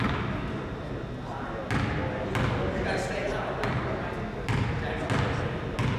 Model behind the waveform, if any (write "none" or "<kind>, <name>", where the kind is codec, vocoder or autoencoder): none